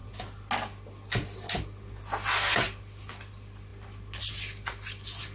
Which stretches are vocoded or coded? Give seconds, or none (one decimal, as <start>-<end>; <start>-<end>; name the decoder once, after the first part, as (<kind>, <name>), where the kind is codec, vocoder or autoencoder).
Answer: none